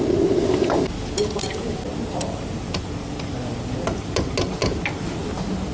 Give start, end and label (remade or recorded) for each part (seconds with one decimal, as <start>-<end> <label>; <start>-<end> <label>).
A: 0.0-5.7 recorded